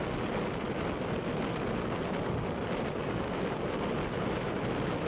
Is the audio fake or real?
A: real